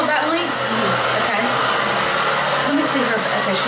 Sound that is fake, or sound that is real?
real